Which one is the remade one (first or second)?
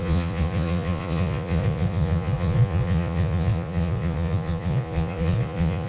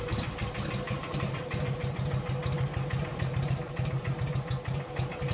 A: first